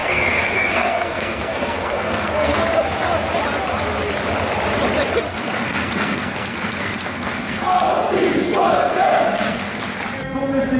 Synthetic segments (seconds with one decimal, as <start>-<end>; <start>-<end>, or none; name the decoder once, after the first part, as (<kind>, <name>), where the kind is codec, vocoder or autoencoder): 0.0-2.6 (codec, SNAC); 5.3-9.8